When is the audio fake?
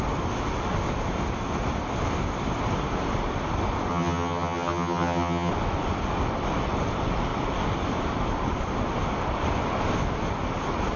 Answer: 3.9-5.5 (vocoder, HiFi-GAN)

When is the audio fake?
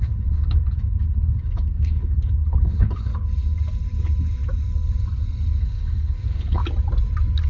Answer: 0.0-3.1 (codec, HILCodec); 5.6-6.6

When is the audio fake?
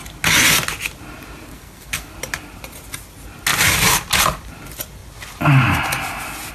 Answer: 1.5-2.1 (codec, SNAC)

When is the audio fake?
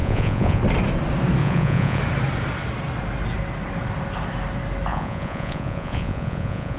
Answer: 0.0-0.6 (vocoder, Vocos); 1.4-2.0; 4.9-6.8